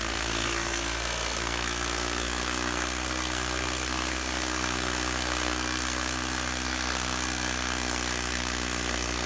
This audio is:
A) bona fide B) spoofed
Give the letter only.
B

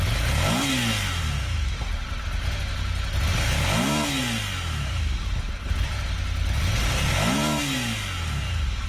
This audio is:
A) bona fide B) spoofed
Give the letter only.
A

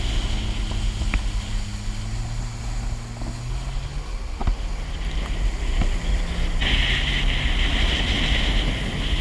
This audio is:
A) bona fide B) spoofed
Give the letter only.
A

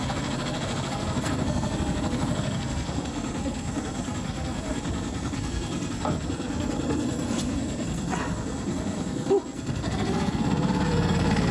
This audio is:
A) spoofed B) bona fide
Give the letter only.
A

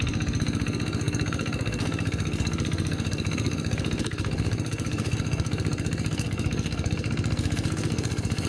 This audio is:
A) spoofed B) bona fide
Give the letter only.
A